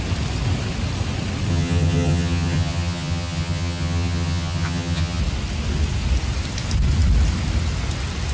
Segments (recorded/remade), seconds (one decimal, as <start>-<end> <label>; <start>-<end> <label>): 0.0-1.5 recorded; 1.5-5.2 remade; 5.2-8.3 recorded